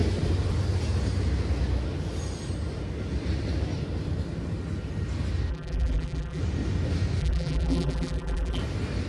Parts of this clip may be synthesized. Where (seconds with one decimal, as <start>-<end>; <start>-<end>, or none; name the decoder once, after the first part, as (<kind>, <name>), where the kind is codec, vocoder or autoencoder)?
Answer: 5.5-6.4 (vocoder, BigVGAN v2); 7.2-8.6